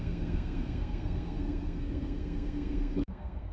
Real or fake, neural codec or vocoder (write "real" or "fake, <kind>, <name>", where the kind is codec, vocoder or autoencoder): fake, codec, SNAC